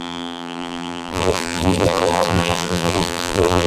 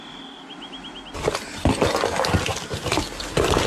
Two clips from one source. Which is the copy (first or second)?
first